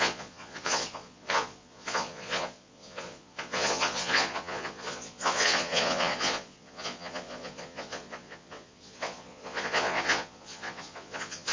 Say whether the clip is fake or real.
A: fake